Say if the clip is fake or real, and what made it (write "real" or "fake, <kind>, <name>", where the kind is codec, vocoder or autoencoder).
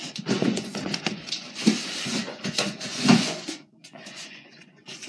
fake, vocoder, Vocos